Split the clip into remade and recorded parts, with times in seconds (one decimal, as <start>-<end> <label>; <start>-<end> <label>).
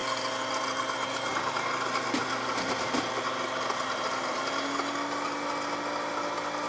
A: 0.0-6.7 recorded